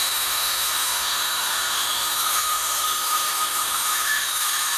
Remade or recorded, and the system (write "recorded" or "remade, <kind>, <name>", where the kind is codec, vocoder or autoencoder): remade, autoencoder, DAC-VAE